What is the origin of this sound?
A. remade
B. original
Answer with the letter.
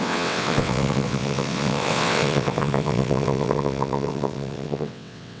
A